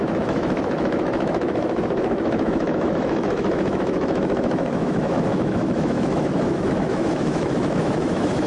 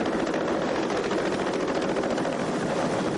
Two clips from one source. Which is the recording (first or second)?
second